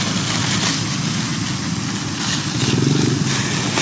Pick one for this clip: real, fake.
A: real